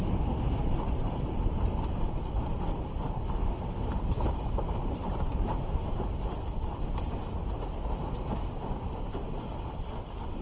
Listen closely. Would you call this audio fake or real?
real